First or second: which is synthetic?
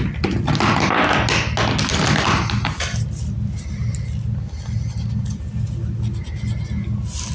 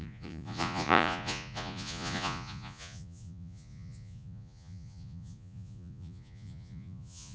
second